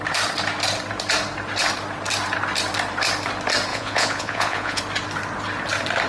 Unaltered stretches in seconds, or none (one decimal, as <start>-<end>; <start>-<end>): 0.0-3.7; 4.8-6.1